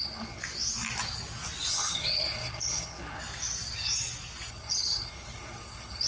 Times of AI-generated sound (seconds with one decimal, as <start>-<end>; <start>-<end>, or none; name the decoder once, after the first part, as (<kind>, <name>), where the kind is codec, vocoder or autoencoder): 0.0-0.4 (codec, HILCodec); 1.7-3.2; 4.5-6.1